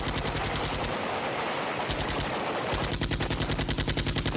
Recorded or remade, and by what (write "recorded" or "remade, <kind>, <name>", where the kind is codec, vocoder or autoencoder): recorded